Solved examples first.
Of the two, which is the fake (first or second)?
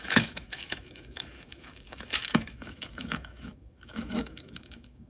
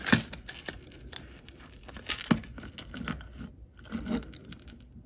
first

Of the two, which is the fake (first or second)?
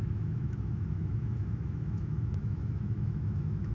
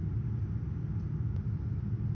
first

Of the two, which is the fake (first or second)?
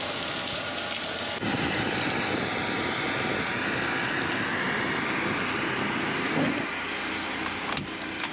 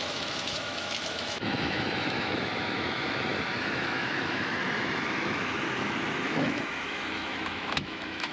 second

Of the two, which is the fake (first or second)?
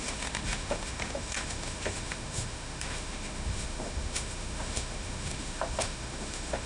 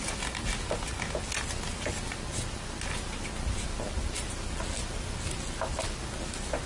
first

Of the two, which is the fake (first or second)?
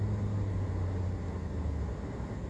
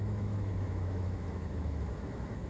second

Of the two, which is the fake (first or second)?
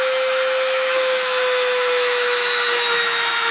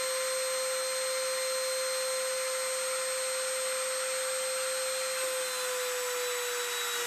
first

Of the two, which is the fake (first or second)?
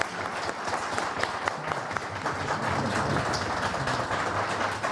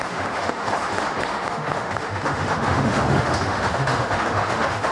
second